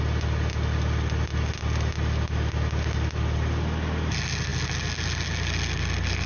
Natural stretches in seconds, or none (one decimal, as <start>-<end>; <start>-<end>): 0.0-6.3